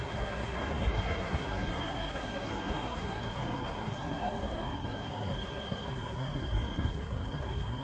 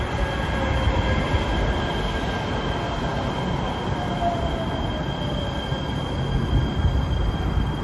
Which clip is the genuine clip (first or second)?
second